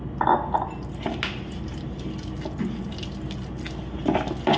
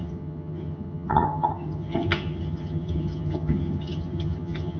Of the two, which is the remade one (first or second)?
second